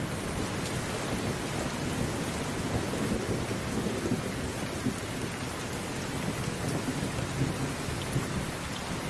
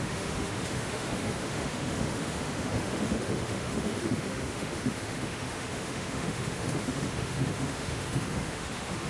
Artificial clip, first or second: second